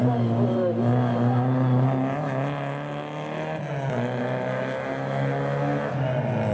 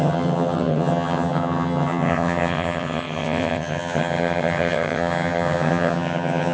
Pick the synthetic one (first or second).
second